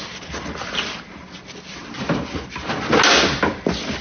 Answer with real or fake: real